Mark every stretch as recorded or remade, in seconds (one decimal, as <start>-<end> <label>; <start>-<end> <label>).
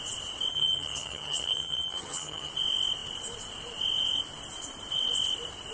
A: 0.0-0.5 recorded; 0.5-2.5 remade; 2.5-5.7 recorded